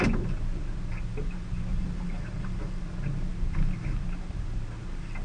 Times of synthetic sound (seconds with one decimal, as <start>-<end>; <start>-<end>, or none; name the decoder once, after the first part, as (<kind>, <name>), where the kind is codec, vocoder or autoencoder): 1.7-2.8 (vocoder, BigVGAN v2)